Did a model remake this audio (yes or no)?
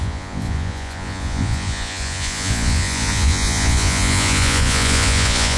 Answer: yes